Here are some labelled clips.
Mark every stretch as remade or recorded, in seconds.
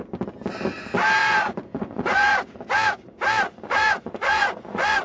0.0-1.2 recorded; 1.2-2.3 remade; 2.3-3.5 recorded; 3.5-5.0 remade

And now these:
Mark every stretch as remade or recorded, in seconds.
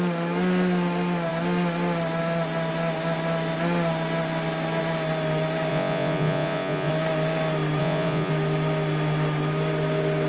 0.0-5.7 recorded; 5.7-6.9 remade; 6.9-7.8 recorded; 7.8-8.3 remade; 8.3-10.3 recorded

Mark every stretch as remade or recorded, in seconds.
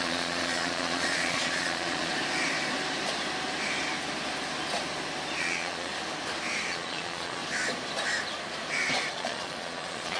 0.0-2.1 remade; 2.1-5.4 recorded; 5.4-5.9 remade; 5.9-6.7 recorded; 6.7-7.4 remade; 7.4-9.1 recorded; 9.1-10.2 remade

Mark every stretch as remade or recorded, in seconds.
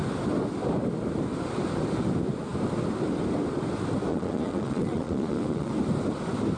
0.0-4.1 recorded; 4.1-5.7 remade; 5.7-6.6 recorded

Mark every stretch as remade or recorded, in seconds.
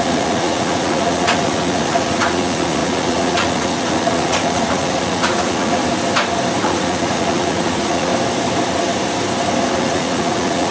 0.0-5.8 remade; 5.8-6.6 recorded; 6.6-8.1 remade; 8.1-9.7 recorded; 9.7-10.7 remade